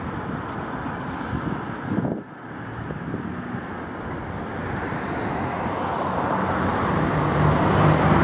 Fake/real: real